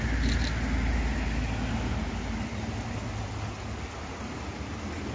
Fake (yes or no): no